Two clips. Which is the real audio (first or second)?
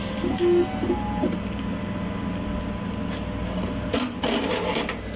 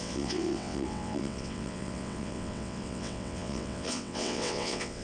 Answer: first